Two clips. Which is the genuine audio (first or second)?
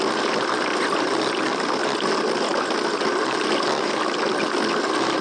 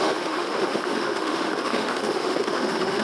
first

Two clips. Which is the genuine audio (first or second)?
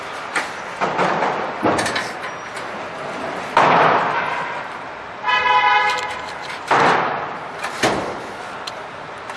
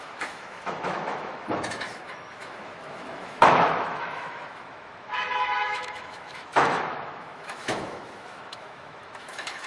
first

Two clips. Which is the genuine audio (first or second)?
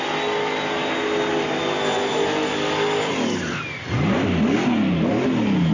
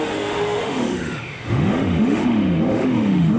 first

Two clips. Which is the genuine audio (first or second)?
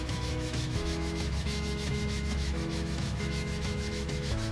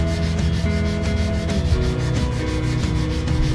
second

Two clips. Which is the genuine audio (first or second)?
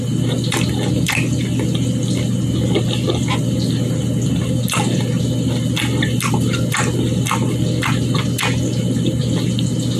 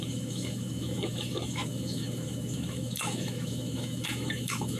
first